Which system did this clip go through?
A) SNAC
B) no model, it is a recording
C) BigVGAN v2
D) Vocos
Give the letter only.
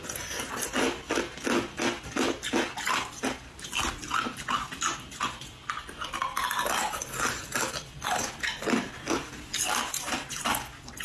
B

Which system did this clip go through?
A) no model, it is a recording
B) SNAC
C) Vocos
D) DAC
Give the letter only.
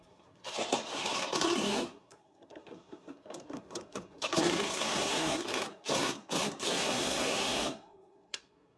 B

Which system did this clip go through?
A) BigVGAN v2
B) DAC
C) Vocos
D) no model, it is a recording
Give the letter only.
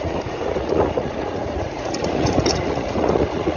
C